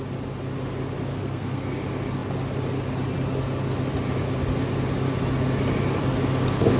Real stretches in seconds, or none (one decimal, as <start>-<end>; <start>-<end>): 0.0-1.1; 1.8-6.8